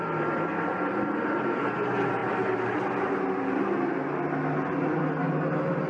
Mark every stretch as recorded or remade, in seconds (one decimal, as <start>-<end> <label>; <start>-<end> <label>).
0.0-5.9 recorded